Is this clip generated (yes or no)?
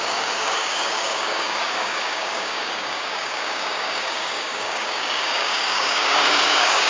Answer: yes